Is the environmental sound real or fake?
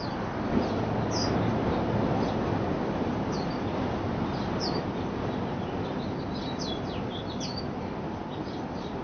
real